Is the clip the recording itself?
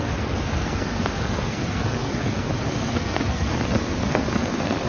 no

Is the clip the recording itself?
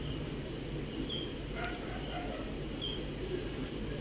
yes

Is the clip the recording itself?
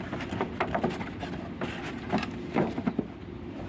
yes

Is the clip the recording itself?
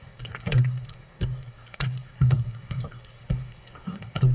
no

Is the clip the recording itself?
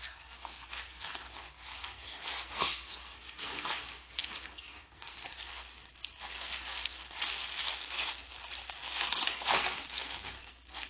no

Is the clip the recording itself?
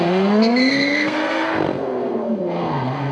no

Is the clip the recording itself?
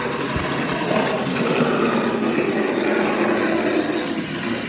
yes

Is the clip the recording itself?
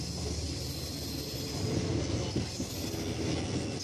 yes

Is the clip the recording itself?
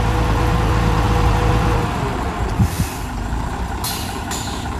yes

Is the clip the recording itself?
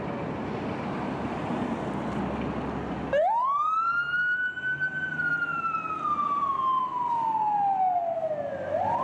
yes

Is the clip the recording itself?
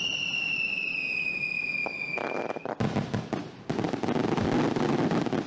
yes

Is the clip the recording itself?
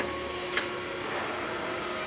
yes